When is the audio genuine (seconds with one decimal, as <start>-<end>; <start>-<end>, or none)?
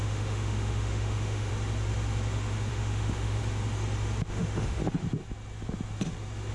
1.5-2.7; 3.4-4.3; 4.8-6.5